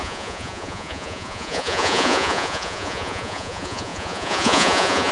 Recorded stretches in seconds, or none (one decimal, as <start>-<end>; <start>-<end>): none